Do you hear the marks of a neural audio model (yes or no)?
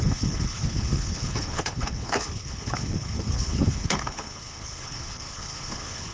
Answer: yes